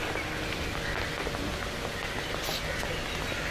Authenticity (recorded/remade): recorded